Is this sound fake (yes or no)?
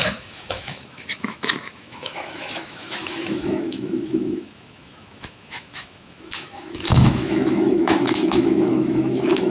yes